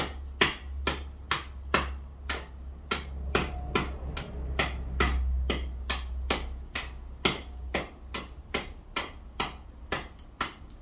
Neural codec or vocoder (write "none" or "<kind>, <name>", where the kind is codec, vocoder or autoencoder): none